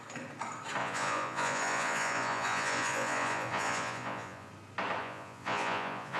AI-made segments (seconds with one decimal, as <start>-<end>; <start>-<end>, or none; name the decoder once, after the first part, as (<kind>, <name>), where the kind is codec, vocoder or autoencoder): 0.8-4.5 (vocoder, Vocos); 5.0-6.2